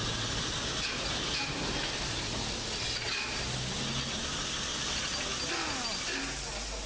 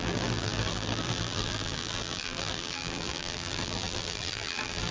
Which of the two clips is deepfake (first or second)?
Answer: second